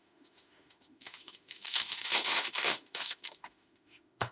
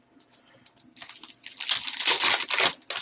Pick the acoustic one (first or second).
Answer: second